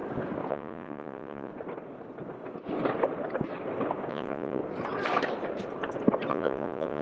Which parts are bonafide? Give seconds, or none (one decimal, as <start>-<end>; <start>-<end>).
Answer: 0.0-0.5; 1.5-4.1; 4.6-6.3